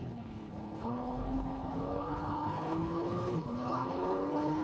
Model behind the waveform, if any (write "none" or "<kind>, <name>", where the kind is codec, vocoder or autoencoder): codec, HILCodec